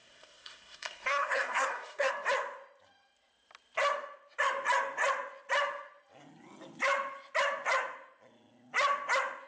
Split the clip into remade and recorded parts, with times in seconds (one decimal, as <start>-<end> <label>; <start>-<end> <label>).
0.0-2.1 remade; 2.1-9.5 recorded